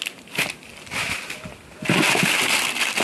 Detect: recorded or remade recorded